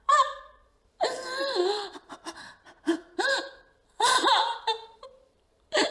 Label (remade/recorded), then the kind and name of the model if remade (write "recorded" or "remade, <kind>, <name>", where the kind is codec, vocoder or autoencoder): remade, vocoder, BigVGAN v2